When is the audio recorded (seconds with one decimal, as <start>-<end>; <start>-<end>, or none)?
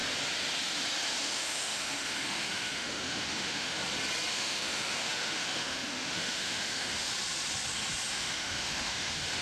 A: 0.0-1.2; 3.8-4.3; 7.1-8.1